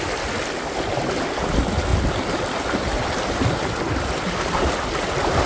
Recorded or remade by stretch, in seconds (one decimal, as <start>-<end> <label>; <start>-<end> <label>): 0.0-5.5 recorded